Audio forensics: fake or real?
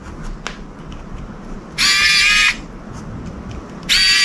real